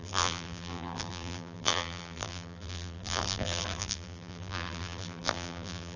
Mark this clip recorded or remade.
remade